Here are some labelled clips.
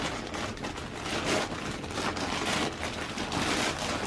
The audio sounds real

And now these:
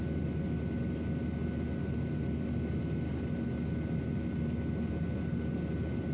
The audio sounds real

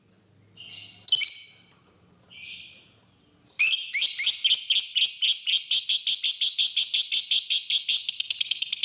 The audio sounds real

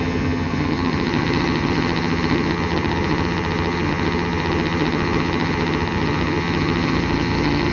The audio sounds fake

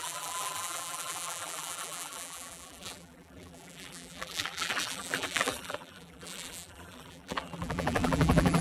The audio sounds fake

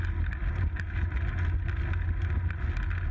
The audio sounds real